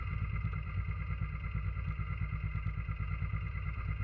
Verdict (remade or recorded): recorded